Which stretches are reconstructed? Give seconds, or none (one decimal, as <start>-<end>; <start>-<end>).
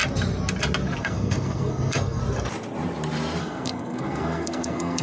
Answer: 1.0-2.2; 3.4-5.0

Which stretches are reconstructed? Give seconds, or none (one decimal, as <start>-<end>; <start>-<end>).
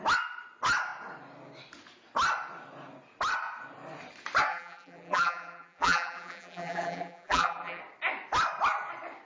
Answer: 4.5-7.8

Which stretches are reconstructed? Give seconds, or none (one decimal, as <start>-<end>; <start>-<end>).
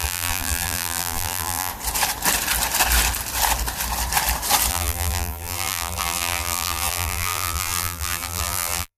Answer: 0.0-1.7; 4.7-9.0